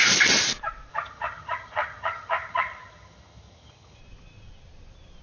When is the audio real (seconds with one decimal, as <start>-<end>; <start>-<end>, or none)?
0.0-0.9; 4.0-5.2